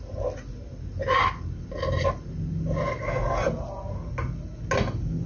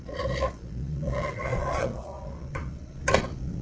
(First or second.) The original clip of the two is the first